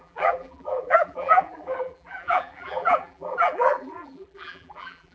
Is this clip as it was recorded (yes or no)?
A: no